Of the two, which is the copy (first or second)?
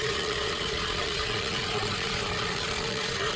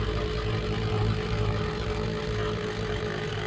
first